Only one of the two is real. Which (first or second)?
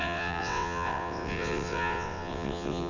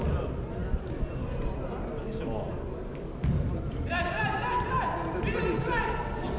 second